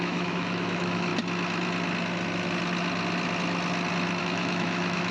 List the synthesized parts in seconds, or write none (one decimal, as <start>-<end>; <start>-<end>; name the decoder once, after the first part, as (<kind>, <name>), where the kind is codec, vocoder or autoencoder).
0.0-1.1 (autoencoder, DAC-VAE); 4.2-5.1